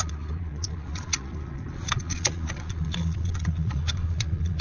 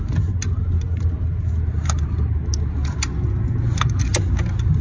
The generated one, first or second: first